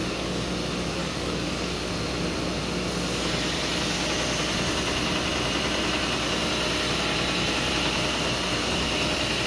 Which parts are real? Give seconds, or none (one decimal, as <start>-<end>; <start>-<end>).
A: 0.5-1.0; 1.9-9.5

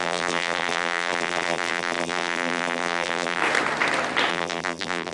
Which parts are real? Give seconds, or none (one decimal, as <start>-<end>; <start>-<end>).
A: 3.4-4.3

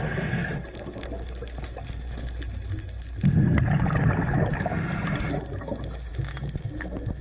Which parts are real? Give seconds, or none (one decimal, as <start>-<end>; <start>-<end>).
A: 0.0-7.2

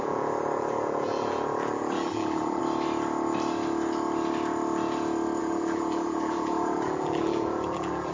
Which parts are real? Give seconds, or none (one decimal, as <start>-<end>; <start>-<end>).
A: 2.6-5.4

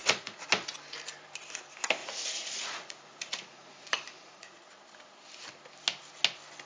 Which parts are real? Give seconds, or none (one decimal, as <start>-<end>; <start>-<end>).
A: 0.5-2.0; 4.7-6.7

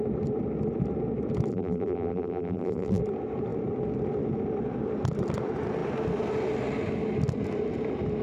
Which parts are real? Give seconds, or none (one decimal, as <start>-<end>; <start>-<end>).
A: 0.0-1.5; 3.0-8.2

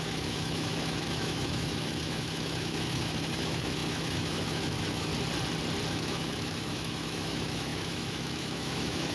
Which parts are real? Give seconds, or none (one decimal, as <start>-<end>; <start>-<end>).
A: 5.1-5.9

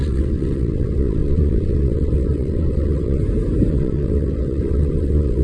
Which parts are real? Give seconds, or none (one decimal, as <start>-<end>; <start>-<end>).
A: 3.2-3.7